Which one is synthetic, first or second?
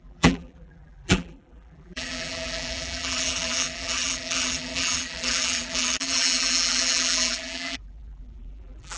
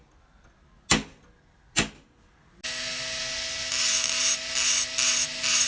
first